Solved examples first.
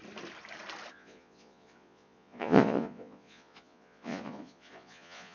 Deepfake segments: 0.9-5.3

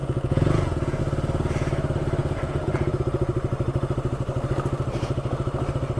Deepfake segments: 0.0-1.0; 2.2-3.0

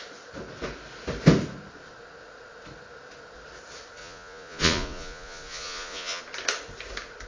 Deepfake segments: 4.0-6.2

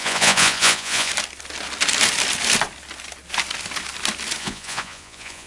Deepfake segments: 0.0-1.1; 4.4-5.5

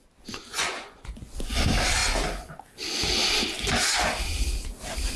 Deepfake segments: 0.5-1.6